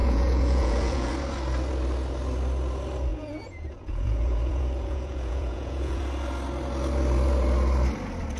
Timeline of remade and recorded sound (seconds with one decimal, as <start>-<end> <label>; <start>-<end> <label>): 0.0-1.1 remade; 1.1-3.1 recorded; 3.1-6.0 remade; 6.0-8.4 recorded